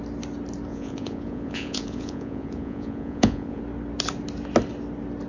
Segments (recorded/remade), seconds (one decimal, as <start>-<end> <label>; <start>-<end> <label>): 0.0-0.7 recorded; 0.7-3.6 remade; 3.6-5.3 recorded